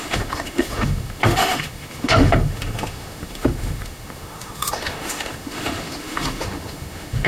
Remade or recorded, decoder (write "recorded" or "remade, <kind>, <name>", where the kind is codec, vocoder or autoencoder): remade, autoencoder, DAC-VAE